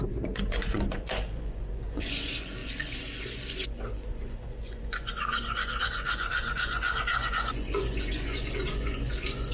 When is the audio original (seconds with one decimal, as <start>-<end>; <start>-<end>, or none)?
none